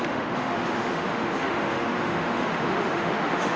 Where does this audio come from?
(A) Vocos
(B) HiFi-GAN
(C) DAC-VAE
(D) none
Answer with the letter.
C